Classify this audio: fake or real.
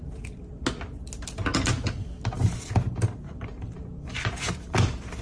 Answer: real